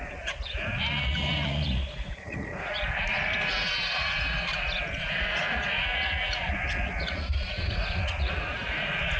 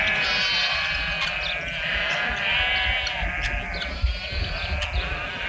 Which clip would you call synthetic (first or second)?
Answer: first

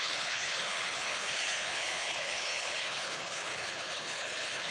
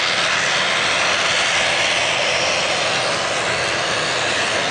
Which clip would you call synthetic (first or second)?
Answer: first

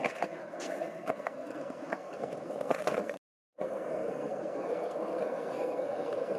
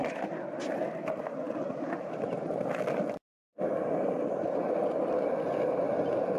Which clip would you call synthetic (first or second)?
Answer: first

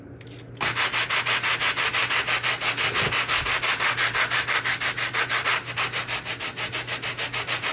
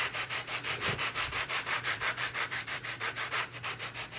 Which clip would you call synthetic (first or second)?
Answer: second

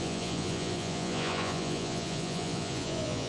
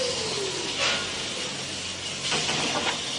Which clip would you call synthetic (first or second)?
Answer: first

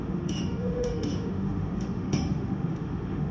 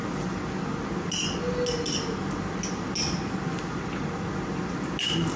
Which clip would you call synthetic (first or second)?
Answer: first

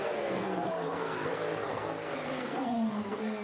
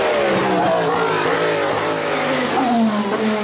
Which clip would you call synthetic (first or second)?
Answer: first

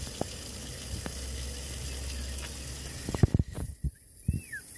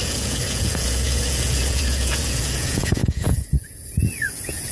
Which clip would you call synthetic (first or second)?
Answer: second